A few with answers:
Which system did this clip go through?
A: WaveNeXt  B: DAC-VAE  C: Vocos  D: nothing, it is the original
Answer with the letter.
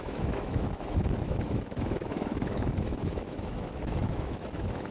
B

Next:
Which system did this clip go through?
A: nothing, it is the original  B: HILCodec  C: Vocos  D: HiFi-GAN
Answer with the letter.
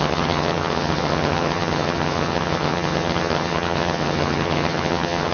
D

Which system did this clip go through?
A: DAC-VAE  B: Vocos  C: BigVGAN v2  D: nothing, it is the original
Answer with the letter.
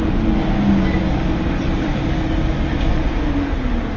D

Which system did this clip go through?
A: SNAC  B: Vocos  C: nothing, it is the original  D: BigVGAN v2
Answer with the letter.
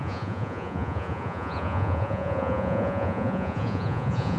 B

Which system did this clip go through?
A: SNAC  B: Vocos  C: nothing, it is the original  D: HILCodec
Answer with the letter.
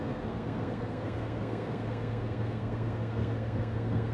A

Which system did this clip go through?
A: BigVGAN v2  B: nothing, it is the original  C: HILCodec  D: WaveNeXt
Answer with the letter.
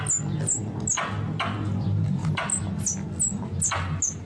B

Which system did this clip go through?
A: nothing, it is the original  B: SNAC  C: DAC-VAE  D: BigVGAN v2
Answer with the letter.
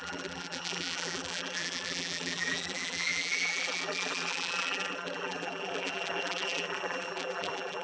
D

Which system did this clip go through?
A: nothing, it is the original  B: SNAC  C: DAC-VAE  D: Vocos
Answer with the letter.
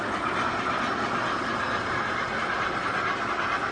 A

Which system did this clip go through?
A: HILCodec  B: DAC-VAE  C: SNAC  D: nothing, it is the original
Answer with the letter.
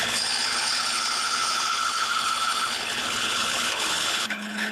A